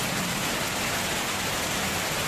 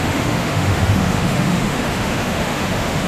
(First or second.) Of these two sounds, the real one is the first